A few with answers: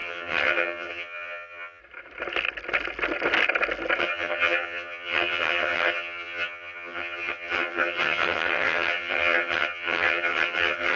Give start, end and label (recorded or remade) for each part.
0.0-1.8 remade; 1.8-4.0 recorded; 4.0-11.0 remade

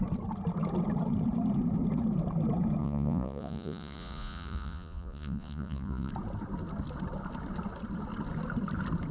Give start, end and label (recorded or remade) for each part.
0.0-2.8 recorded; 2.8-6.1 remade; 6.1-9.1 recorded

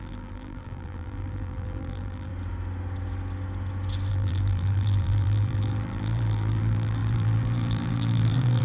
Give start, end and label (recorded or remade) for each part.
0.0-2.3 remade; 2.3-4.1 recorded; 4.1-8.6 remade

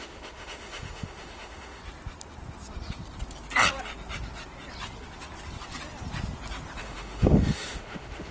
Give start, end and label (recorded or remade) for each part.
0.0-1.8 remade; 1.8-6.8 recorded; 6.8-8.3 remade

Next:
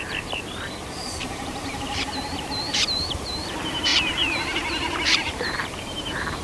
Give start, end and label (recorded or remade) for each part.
0.0-6.4 remade